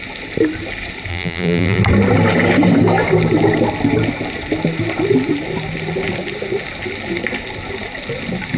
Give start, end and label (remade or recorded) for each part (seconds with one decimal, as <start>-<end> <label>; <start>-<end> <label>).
0.0-1.1 recorded; 1.1-1.8 remade; 1.8-8.6 recorded